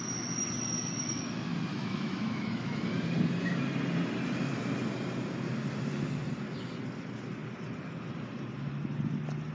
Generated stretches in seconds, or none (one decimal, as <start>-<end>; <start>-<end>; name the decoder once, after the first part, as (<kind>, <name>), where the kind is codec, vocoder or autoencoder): 1.7-2.9 (autoencoder, DAC-VAE)